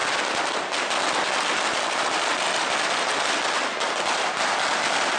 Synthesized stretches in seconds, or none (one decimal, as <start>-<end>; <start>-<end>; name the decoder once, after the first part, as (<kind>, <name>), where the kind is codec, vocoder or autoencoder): none